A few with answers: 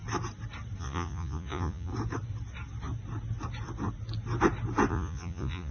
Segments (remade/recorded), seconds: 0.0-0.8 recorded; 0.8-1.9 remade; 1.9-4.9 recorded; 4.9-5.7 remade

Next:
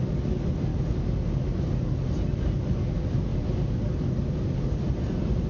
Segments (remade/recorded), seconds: 0.0-5.5 recorded

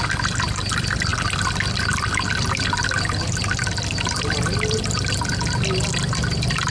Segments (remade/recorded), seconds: 0.0-6.7 recorded

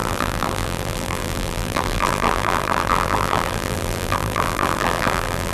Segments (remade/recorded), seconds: 0.0-5.5 remade

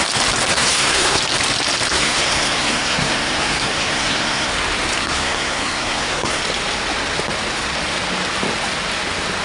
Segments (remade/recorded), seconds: 0.0-0.5 recorded; 0.5-1.2 remade; 1.2-1.9 recorded; 1.9-4.5 remade; 4.5-5.0 recorded; 5.0-6.4 remade; 6.4-9.4 recorded

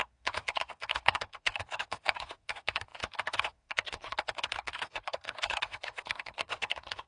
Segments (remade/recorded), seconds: 0.0-7.1 remade

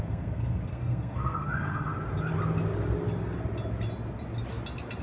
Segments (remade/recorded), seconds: 0.0-1.9 remade; 1.9-5.0 recorded